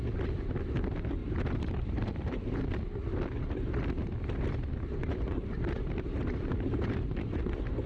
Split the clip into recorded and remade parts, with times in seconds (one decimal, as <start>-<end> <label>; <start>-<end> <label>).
0.0-1.2 recorded; 1.2-2.6 remade; 2.6-5.0 recorded; 5.0-7.4 remade; 7.4-7.9 recorded